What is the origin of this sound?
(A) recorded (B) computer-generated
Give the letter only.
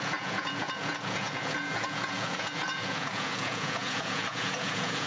B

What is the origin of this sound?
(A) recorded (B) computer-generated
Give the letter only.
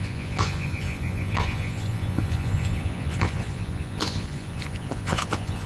B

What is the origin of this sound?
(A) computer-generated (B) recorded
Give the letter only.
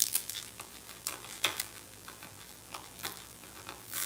A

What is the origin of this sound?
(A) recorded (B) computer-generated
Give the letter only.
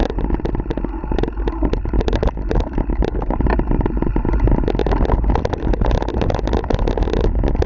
A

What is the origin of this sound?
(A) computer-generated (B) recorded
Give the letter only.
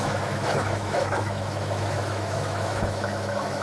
A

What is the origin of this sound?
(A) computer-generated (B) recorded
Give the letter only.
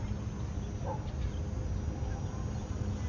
B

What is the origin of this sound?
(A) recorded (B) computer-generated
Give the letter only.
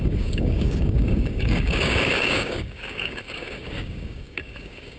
B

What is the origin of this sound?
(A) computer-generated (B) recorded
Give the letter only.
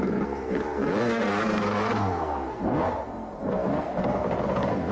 A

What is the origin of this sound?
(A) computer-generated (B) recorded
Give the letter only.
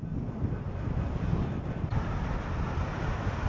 B